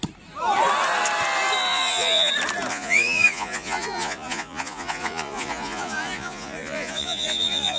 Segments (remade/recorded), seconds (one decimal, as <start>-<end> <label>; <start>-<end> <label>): 0.0-1.7 recorded; 1.7-2.3 remade; 2.3-2.7 recorded; 2.7-7.8 remade